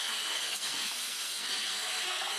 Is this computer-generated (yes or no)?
yes